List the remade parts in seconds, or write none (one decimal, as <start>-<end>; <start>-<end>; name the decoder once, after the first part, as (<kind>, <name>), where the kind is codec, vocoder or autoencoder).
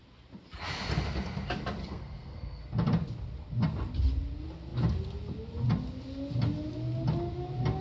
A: 1.8-2.6 (codec, SNAC)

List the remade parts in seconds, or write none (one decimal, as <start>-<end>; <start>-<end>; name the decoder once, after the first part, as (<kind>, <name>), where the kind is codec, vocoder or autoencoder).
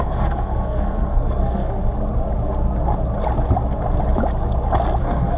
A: 0.0-1.8 (codec, SNAC); 5.0-5.4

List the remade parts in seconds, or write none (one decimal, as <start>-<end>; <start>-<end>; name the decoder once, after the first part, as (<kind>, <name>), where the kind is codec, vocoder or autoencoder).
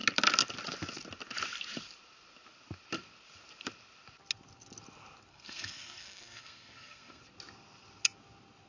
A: 5.3-7.2 (codec, SNAC)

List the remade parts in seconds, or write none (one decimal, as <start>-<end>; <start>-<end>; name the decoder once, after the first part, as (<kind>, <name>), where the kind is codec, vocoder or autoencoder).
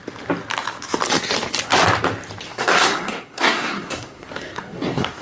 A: 2.5-5.2 (codec, SNAC)